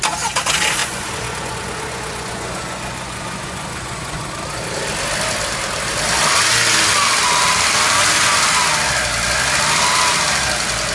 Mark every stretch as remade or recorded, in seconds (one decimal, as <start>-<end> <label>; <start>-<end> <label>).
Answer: 0.0-0.8 recorded; 0.8-4.3 remade; 4.3-10.9 recorded